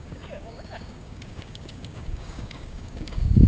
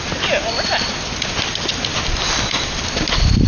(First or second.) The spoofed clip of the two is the first